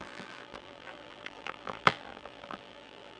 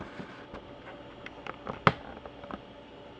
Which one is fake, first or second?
first